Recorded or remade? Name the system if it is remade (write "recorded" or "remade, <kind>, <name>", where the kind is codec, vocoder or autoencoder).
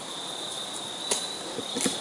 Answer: recorded